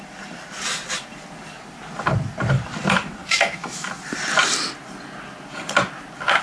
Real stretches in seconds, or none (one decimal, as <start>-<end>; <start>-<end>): 0.0-3.2; 3.9-6.4